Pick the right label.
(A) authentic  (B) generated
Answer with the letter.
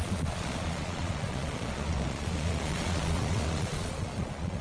B